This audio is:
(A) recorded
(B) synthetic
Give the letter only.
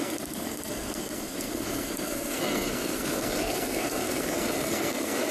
B